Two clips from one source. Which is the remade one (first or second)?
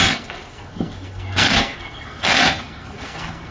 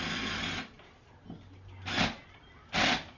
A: first